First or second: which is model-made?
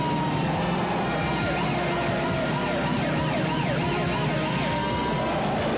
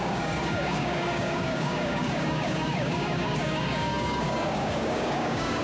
second